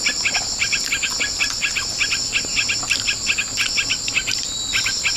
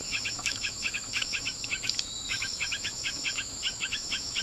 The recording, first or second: first